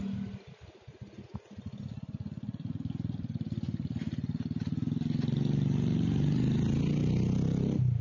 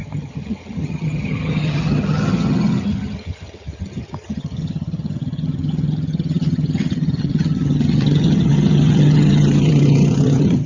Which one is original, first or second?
first